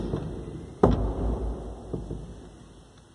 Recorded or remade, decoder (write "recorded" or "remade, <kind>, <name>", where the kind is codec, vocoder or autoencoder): recorded